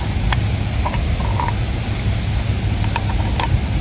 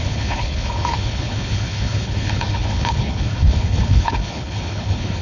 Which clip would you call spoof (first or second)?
second